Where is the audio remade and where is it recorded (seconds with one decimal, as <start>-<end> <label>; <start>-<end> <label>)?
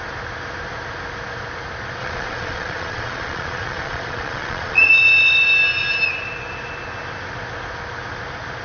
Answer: 0.0-2.0 recorded; 2.0-4.9 remade; 4.9-8.6 recorded